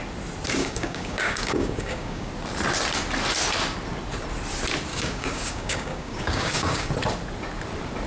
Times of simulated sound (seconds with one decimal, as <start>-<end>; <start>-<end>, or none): 0.6-2.3; 4.9-6.9

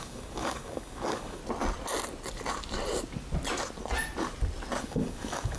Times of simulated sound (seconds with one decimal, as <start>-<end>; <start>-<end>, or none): 0.0-1.4; 4.8-5.6

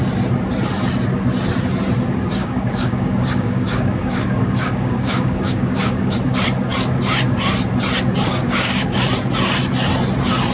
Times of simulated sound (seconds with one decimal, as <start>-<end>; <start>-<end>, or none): 2.4-6.2; 8.3-9.0

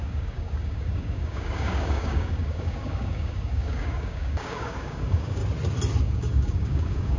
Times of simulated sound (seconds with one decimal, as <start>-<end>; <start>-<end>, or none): 0.0-5.4; 6.0-7.2

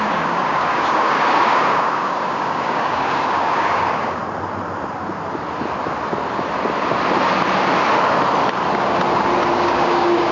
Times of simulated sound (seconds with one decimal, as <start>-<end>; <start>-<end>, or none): 0.0-4.2; 9.5-10.3

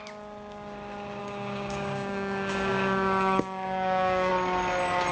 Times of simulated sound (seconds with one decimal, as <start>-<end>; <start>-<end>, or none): 1.2-4.3